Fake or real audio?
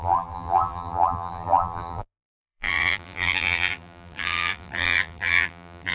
fake